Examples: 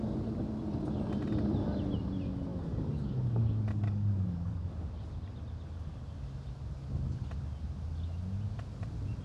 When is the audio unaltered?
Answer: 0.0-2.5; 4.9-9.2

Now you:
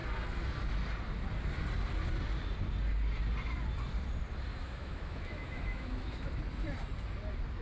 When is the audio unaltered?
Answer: 0.0-4.5; 6.4-7.6